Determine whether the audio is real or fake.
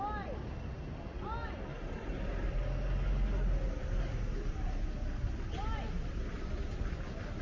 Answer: real